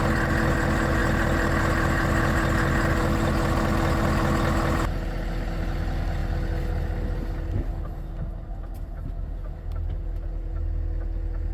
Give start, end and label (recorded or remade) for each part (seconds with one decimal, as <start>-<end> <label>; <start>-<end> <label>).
0.0-11.5 recorded